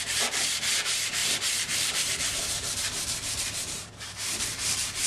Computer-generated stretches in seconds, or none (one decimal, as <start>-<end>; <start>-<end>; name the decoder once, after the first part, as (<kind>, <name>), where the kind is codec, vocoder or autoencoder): 0.0-5.1 (vocoder, BigVGAN v2)